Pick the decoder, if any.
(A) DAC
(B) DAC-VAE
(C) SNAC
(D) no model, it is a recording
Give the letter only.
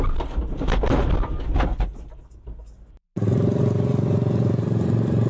D